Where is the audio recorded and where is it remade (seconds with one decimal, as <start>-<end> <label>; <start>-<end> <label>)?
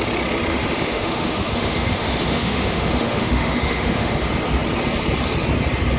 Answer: 0.0-0.5 recorded; 0.5-4.1 remade; 4.1-6.0 recorded